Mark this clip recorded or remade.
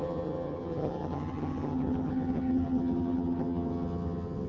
remade